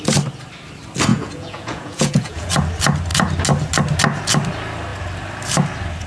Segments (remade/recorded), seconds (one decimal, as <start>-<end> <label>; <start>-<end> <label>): 0.0-1.1 recorded; 1.1-2.5 remade; 2.5-6.1 recorded